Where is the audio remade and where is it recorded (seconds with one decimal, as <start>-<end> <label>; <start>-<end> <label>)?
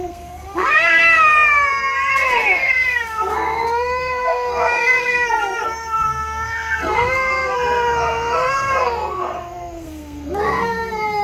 0.0-1.3 remade; 1.3-2.1 recorded; 2.1-11.2 remade